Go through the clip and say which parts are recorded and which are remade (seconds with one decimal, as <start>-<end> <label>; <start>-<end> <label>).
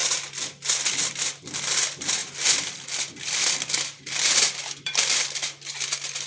0.0-1.4 recorded; 1.4-6.3 remade